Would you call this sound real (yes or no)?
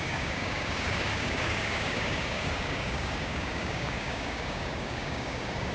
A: no